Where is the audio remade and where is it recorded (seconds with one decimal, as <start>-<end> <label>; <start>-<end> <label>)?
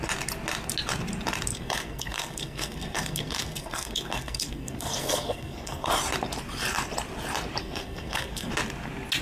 0.0-1.5 recorded; 1.5-5.9 remade; 5.9-7.6 recorded; 7.6-8.5 remade; 8.5-9.2 recorded